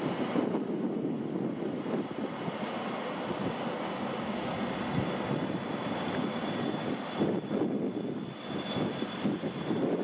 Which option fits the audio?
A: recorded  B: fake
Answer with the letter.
A